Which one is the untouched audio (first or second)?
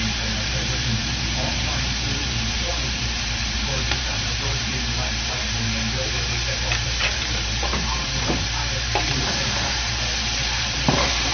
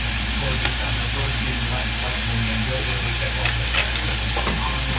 second